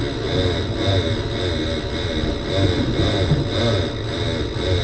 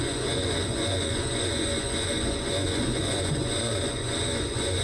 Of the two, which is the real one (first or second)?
first